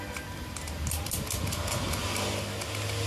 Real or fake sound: real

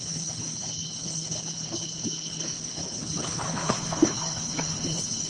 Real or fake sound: fake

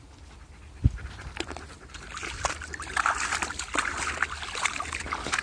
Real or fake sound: real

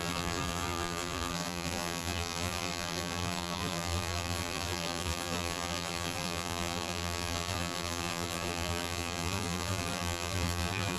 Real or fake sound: fake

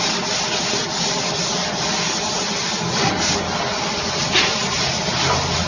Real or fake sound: real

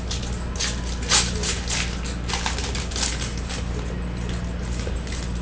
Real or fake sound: real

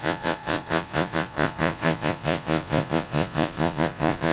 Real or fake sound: fake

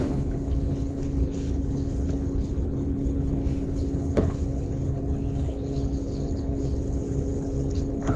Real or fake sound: fake